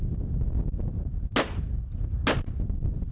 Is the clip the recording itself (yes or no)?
yes